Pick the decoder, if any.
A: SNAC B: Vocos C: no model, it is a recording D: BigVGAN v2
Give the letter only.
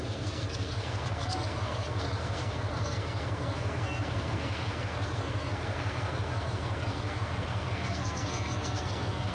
A